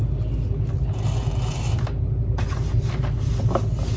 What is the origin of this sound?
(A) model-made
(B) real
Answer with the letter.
B